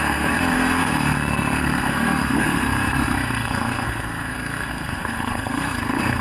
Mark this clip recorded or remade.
remade